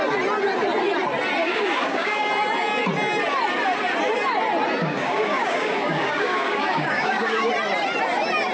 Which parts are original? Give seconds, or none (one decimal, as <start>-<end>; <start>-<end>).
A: 0.0-1.4; 2.3-4.8; 7.5-8.5